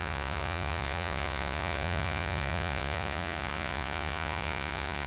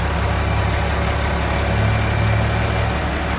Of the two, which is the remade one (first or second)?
first